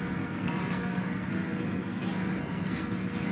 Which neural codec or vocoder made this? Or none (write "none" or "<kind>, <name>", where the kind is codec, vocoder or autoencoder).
codec, SNAC